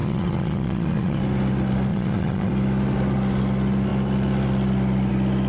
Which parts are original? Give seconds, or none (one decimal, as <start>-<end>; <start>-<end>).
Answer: 1.2-1.9; 2.5-5.5